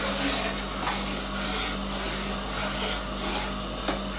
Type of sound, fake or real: real